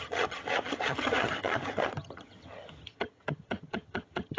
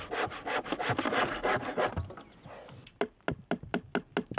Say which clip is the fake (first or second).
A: first